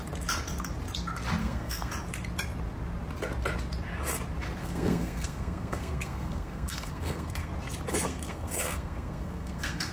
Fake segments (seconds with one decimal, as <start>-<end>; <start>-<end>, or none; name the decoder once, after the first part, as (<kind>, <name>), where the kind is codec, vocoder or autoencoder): 1.4-1.9 (codec, SNAC); 4.6-7.5; 7.9-9.9